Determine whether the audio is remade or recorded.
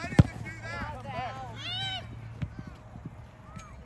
recorded